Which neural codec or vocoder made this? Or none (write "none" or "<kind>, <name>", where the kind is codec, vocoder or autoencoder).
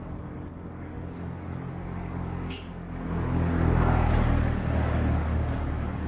codec, DAC